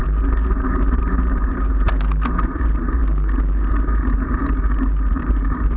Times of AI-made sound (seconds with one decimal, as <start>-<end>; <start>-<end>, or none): 0.0-3.0; 3.7-4.4; 5.1-5.8